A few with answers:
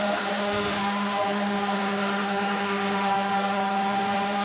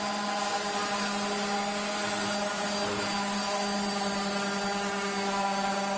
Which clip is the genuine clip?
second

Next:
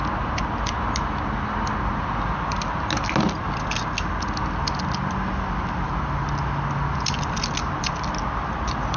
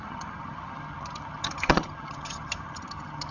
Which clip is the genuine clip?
first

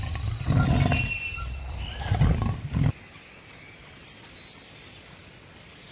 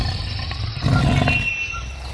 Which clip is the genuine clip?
second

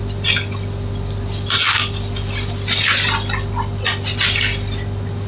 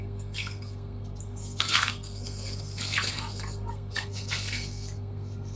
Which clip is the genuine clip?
first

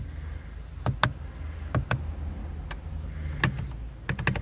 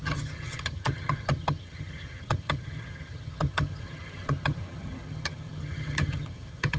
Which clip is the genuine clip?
first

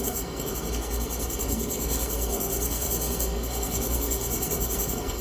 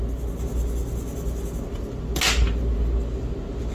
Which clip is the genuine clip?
second